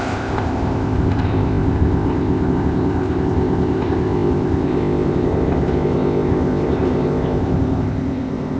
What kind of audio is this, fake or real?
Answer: fake